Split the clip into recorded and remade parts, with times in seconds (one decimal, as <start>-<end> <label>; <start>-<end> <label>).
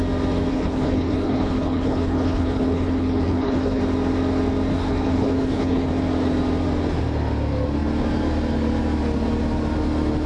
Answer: 0.0-0.5 recorded; 0.5-3.8 remade; 3.8-4.7 recorded; 4.7-5.9 remade; 5.9-10.3 recorded